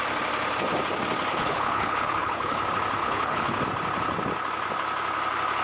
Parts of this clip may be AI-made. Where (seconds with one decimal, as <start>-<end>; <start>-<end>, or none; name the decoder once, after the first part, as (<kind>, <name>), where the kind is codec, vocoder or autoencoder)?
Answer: 1.3-2.6 (codec, HILCodec); 3.0-3.6